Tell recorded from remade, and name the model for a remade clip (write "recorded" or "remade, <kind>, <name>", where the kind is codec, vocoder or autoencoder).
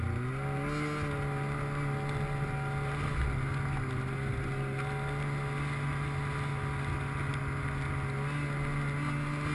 recorded